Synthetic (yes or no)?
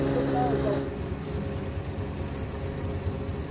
no